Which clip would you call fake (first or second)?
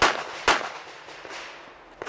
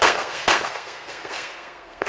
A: second